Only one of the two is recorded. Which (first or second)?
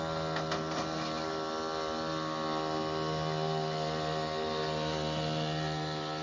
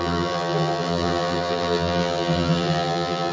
first